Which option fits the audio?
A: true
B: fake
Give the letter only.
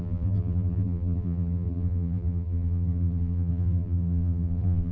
B